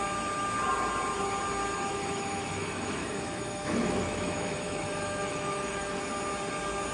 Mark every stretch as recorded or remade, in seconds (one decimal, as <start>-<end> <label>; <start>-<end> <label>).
0.0-1.9 recorded; 1.9-6.0 remade; 6.0-6.9 recorded